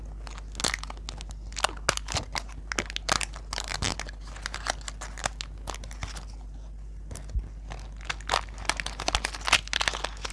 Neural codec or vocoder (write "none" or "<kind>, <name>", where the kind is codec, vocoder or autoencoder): none